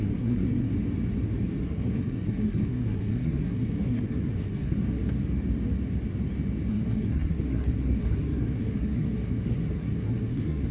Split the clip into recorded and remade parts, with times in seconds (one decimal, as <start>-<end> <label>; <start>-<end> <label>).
0.0-0.7 remade; 0.7-1.6 recorded; 1.6-5.0 remade; 5.0-6.7 recorded; 6.7-10.7 remade